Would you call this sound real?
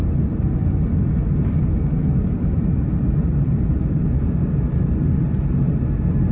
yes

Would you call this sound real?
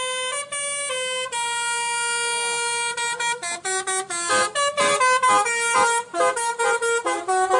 yes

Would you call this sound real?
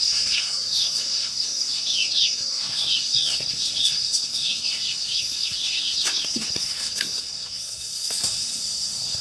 no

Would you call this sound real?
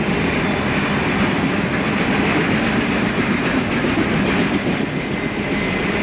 yes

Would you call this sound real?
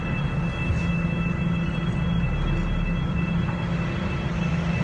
yes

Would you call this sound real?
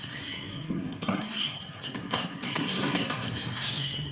no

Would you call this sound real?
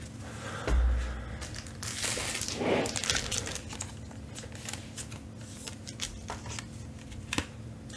yes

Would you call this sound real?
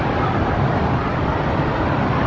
yes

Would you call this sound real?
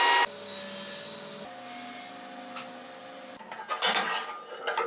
yes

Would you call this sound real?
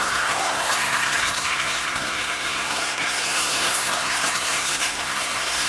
no